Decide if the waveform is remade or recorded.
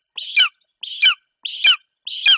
recorded